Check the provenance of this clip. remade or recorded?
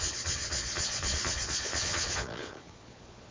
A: remade